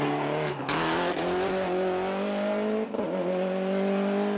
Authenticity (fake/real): real